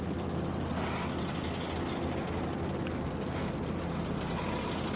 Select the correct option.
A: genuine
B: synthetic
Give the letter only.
A